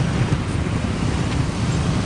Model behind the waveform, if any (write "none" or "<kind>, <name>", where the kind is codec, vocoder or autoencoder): none